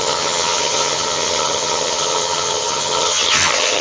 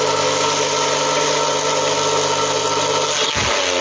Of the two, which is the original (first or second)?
second